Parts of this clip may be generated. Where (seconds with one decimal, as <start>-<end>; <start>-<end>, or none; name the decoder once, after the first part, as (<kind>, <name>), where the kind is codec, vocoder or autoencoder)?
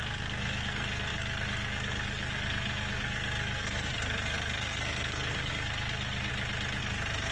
0.0-6.3 (codec, SNAC); 6.8-7.3